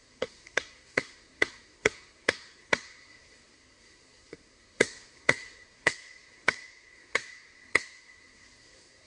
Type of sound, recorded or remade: remade